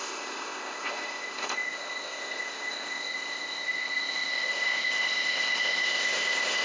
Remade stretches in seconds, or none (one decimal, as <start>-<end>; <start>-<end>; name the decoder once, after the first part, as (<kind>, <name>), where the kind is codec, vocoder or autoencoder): 0.0-6.6 (codec, ZipCodec)